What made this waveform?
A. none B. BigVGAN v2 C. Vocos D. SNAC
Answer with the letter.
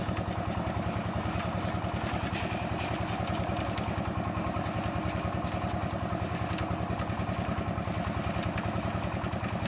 A